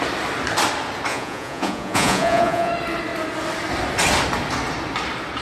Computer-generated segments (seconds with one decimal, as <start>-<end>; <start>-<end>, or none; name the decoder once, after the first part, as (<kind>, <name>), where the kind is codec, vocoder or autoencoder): 1.1-2.7 (vocoder, Vocos)